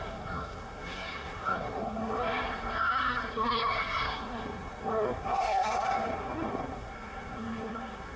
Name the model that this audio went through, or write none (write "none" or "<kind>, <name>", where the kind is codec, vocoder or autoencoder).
codec, SNAC